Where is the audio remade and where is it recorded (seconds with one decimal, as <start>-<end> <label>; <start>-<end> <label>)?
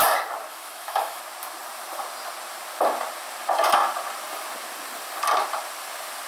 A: 0.0-0.5 recorded; 0.5-1.2 remade; 1.2-6.3 recorded